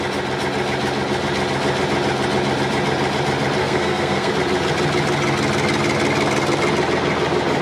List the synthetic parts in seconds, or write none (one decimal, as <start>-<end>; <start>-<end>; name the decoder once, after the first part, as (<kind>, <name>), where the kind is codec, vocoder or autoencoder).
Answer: 3.6-4.3 (codec, SNAC)